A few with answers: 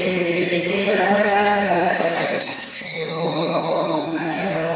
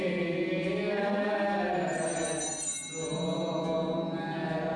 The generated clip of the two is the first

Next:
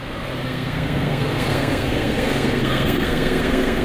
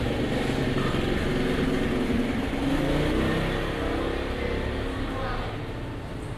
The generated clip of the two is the first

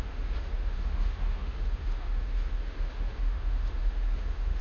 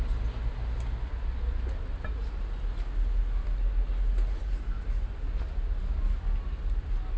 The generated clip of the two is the first